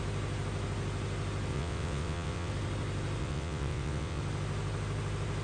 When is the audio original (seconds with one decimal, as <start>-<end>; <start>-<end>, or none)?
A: 0.0-1.5; 2.5-3.2; 4.2-5.4